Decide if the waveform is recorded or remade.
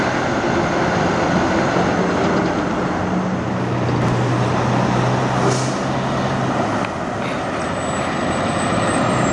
recorded